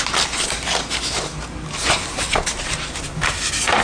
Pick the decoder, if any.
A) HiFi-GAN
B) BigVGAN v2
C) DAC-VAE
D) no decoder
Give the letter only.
D